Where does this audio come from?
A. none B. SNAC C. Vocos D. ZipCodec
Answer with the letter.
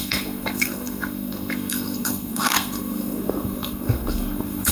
B